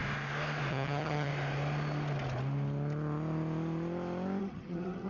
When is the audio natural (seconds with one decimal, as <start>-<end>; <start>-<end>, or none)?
0.0-0.7; 1.3-4.4